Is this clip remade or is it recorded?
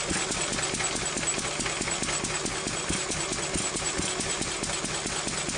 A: recorded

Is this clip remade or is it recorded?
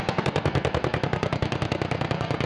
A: remade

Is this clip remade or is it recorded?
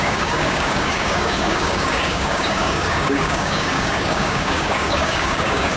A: remade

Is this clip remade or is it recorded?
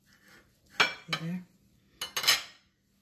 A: recorded